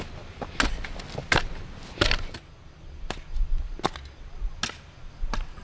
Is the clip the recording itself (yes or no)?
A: yes